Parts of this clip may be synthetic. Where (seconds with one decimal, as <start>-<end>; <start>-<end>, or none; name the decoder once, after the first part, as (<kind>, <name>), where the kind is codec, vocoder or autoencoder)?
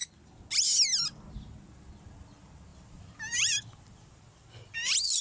2.7-4.2 (vocoder, BigVGAN v2)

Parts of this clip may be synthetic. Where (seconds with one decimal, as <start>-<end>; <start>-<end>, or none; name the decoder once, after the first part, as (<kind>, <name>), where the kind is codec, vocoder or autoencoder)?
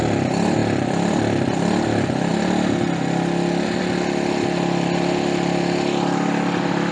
0.6-1.2 (vocoder, BigVGAN v2)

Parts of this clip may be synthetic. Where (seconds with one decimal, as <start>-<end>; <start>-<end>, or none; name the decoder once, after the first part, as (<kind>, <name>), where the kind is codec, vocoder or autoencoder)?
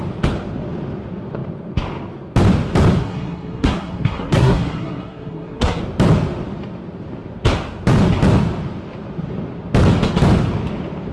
3.0-5.8 (codec, SNAC)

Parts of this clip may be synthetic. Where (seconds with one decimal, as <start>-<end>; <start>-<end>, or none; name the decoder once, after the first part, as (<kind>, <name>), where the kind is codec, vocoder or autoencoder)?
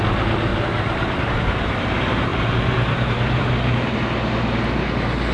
0.5-1.3 (vocoder, BigVGAN v2); 2.3-3.5